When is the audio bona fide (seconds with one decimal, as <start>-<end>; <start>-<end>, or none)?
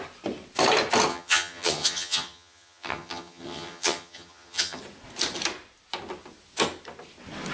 0.0-1.1; 4.8-7.5